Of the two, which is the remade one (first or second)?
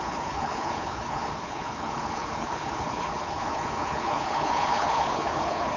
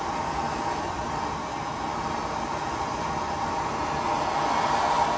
first